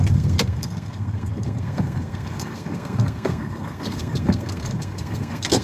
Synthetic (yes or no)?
yes